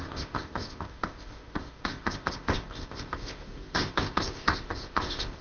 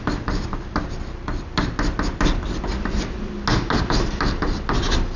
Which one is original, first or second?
second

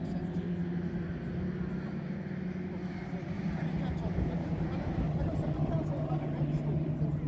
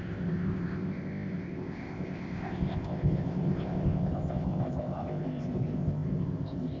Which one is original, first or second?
first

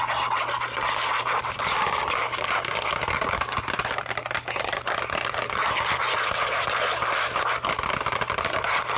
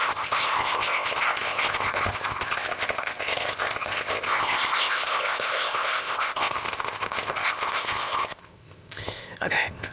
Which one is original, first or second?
first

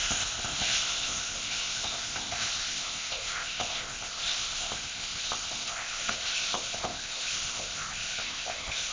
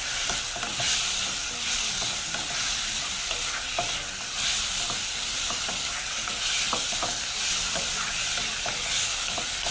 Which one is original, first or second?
second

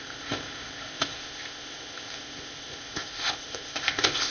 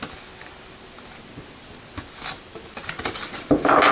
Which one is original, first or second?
second